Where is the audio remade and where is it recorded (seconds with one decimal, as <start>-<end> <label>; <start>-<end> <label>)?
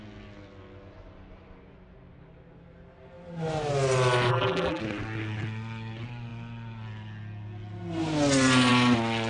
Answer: 0.0-4.3 recorded; 4.3-4.8 remade; 4.8-9.3 recorded